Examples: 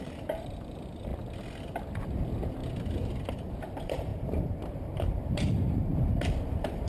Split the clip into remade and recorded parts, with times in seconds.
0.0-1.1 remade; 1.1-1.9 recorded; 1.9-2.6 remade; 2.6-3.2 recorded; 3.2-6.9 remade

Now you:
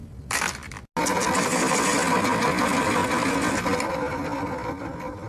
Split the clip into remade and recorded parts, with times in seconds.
0.0-0.7 remade; 0.7-5.3 recorded

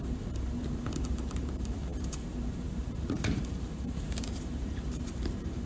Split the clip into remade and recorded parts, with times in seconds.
0.0-5.7 remade

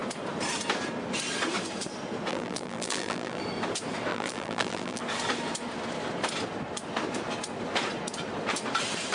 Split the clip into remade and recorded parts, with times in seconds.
0.0-2.3 recorded; 2.3-3.4 remade; 3.4-4.1 recorded; 4.1-5.0 remade; 5.0-9.1 recorded

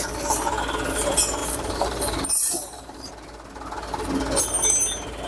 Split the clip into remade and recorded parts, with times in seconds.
0.0-1.4 recorded; 1.4-3.1 remade; 3.1-5.3 recorded